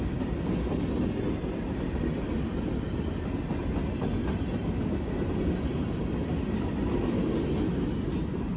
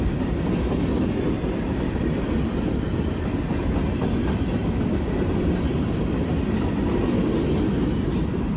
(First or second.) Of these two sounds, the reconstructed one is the second